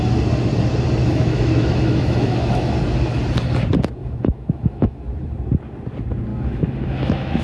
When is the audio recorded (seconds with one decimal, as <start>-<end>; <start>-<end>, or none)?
0.0-1.0; 2.7-4.0; 5.0-6.3